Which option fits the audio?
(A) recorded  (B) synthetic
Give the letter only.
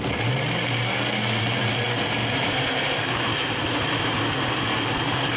A